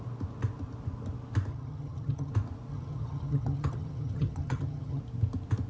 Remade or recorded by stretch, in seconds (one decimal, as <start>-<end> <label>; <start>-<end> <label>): 0.0-1.5 recorded; 1.5-2.3 remade; 2.3-2.7 recorded; 2.7-5.0 remade; 5.0-5.7 recorded

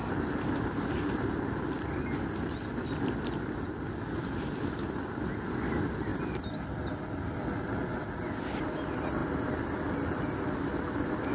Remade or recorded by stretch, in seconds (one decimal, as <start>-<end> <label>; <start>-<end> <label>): 0.0-11.3 recorded

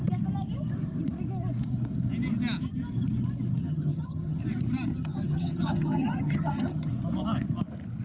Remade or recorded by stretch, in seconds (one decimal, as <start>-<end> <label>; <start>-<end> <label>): 0.0-3.6 recorded; 3.6-4.4 remade; 4.4-4.9 recorded; 4.9-6.9 remade; 6.9-8.0 recorded

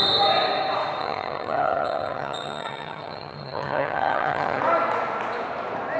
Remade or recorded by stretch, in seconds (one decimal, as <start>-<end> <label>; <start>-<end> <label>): 0.0-1.0 recorded; 1.0-4.6 remade; 4.6-6.0 recorded

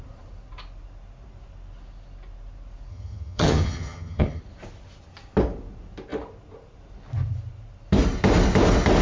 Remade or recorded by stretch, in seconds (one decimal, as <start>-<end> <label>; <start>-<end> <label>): 0.0-2.9 recorded; 2.9-4.4 remade; 4.4-9.0 recorded

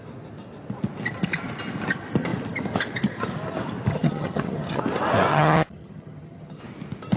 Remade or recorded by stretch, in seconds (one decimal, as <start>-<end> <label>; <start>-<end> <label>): 0.0-3.9 recorded; 3.9-4.8 remade; 4.8-5.3 recorded; 5.3-6.6 remade; 6.6-7.2 recorded

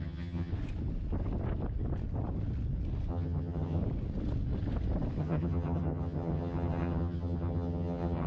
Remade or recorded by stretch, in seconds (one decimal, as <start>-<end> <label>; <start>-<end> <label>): 0.0-0.5 remade; 0.5-3.1 recorded; 3.1-3.8 remade; 3.8-5.2 recorded; 5.2-8.3 remade